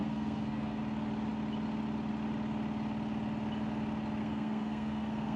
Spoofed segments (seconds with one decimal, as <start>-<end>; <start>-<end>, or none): 0.0-0.8; 4.2-5.4